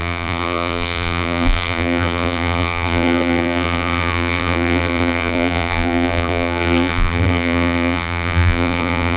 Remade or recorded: remade